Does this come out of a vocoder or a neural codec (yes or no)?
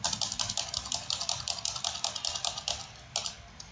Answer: no